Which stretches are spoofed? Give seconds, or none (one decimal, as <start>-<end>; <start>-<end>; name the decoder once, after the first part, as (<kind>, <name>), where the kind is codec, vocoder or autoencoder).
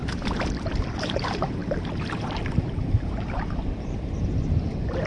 0.0-5.1 (vocoder, BigVGAN v2)